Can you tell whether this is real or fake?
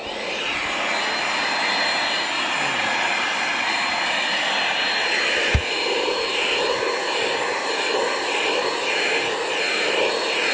real